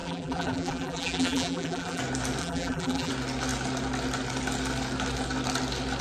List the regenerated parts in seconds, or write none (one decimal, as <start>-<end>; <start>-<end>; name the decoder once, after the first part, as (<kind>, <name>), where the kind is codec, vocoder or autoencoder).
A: 0.0-2.0 (vocoder, BigVGAN v2); 2.4-3.1